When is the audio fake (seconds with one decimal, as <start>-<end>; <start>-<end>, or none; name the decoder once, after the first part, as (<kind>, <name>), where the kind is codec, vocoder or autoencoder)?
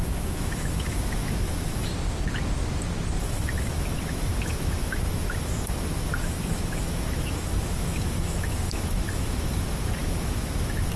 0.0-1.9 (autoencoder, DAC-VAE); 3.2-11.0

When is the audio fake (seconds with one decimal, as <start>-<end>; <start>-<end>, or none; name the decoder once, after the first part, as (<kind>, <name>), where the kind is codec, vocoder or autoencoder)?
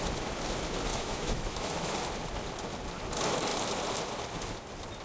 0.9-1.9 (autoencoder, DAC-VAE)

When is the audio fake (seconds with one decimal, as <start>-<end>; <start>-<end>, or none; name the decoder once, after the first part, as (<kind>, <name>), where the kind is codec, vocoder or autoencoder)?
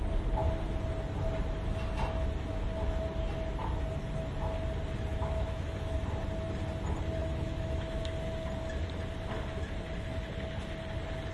5.1-5.9 (autoencoder, DAC-VAE); 7.2-8.0